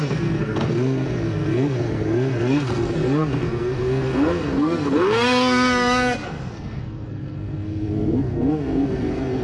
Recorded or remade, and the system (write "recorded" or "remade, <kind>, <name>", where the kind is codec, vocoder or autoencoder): remade, codec, SNAC